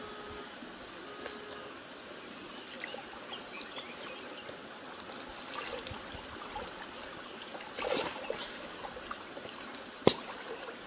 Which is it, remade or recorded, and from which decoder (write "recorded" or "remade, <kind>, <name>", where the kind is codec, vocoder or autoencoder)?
recorded